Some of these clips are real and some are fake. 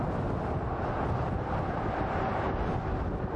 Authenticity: real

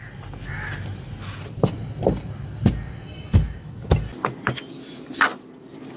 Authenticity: real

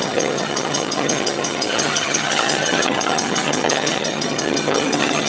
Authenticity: fake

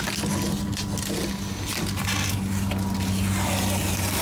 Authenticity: real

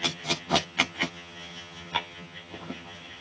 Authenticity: fake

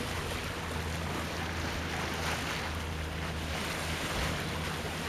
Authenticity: real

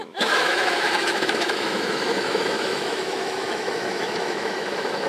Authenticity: fake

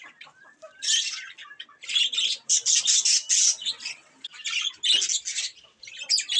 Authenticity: real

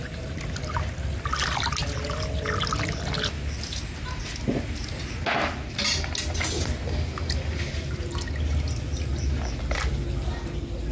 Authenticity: real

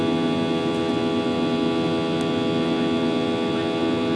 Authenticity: real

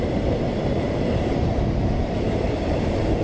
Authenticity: fake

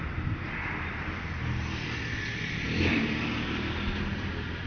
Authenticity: real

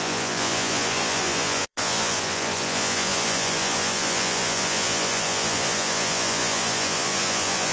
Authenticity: fake